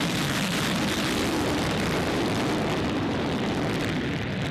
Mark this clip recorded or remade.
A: remade